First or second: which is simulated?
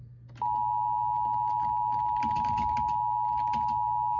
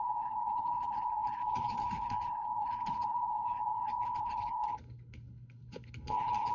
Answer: second